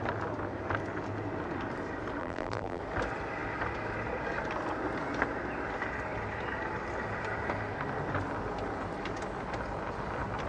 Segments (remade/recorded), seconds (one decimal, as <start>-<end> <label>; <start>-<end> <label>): 0.0-2.2 recorded; 2.2-2.8 remade; 2.8-10.5 recorded

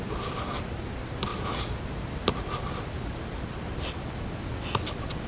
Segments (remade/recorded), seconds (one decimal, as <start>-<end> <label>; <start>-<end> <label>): 0.0-1.3 recorded; 1.3-4.5 remade; 4.5-5.3 recorded

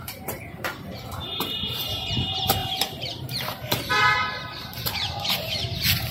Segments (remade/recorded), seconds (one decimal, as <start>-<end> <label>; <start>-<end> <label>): 0.0-6.1 remade

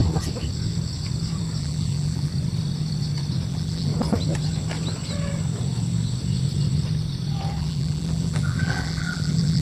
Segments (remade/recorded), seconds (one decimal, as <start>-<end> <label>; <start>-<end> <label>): 0.0-1.6 recorded; 1.6-2.3 remade; 2.3-3.5 recorded; 3.5-3.9 remade; 3.9-7.6 recorded; 7.6-9.6 remade